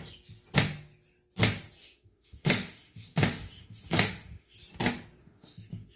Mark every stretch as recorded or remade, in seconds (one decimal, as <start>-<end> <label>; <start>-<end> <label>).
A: 0.0-1.8 recorded; 1.8-4.6 remade; 4.6-5.2 recorded; 5.2-6.0 remade